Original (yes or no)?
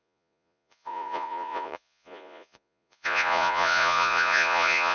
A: no